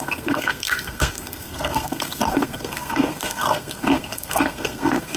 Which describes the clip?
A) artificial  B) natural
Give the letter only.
A